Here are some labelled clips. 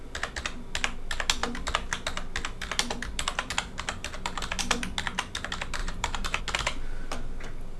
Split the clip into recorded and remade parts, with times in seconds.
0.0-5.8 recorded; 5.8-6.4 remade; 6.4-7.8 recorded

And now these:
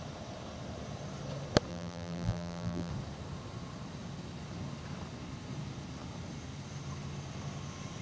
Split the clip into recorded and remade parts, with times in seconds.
0.0-1.7 recorded; 1.7-2.9 remade; 2.9-8.0 recorded

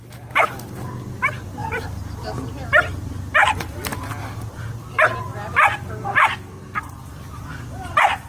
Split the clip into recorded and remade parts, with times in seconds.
0.0-1.6 remade; 1.6-3.4 recorded; 3.4-3.9 remade; 3.9-5.2 recorded; 5.2-8.3 remade

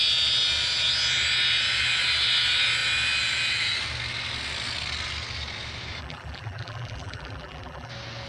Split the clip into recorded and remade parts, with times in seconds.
0.0-6.0 recorded; 6.0-7.9 remade; 7.9-8.3 recorded

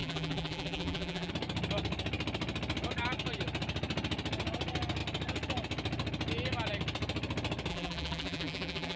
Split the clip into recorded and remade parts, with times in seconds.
0.0-1.3 remade; 1.3-7.7 recorded; 7.7-9.0 remade